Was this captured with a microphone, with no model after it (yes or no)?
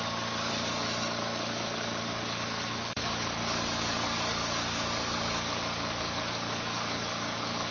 no